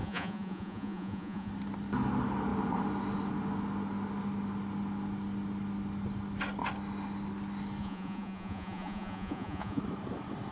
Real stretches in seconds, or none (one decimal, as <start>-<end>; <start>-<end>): 1.5-7.8; 9.8-10.5